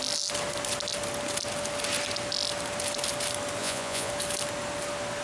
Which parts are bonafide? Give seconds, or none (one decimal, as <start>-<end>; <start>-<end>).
0.0-3.6; 4.1-5.2

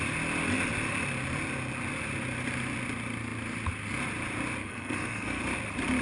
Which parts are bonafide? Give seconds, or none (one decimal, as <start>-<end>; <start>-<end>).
0.0-4.6; 5.4-6.0

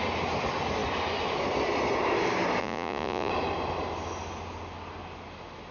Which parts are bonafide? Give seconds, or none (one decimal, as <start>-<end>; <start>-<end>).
0.0-2.6; 3.3-5.7

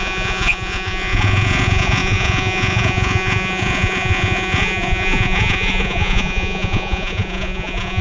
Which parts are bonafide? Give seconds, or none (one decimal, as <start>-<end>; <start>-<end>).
none

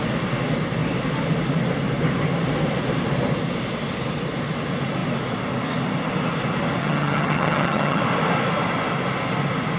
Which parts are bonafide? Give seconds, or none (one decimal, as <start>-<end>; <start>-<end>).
0.0-6.8; 8.0-9.8

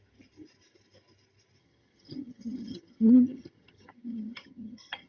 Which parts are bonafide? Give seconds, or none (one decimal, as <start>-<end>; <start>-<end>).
0.0-1.6

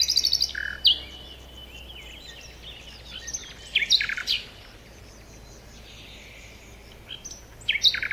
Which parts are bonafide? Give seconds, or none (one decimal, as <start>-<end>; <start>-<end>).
0.0-3.4; 5.0-8.1

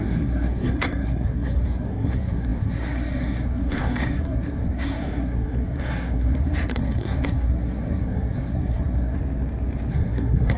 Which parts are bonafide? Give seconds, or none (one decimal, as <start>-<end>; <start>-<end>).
9.2-9.9